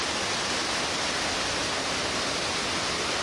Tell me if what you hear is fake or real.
real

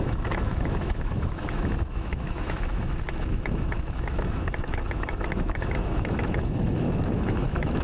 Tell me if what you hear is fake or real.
fake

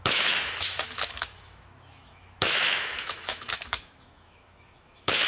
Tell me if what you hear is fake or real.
fake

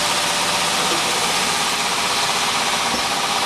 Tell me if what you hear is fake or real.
real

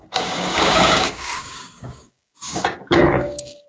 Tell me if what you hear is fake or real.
fake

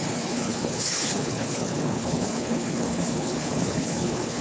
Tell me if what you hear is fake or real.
fake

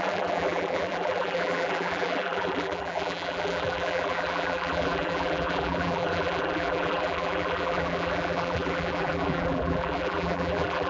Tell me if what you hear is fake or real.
fake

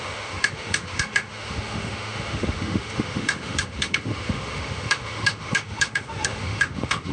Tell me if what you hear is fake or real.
fake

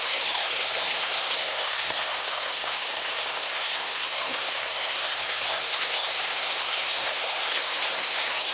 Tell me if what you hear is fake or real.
fake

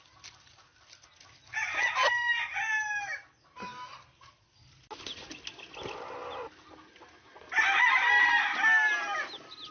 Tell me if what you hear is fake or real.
real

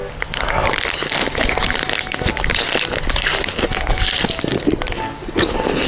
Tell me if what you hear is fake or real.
real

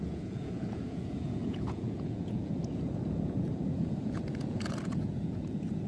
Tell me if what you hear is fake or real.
fake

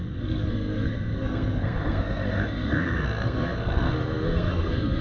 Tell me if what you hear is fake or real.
fake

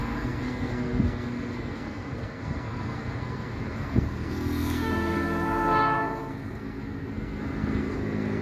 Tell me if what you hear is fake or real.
fake